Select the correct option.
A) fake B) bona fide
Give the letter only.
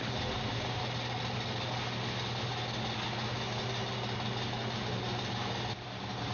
B